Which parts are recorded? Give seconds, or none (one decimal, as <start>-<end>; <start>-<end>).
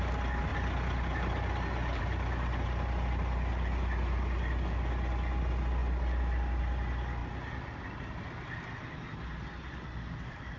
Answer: 0.0-10.6